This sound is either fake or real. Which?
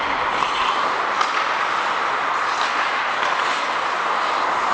real